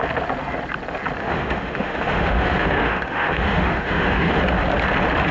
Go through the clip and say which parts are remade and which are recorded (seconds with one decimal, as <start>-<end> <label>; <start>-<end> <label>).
0.0-1.2 recorded; 1.2-4.4 remade; 4.4-5.3 recorded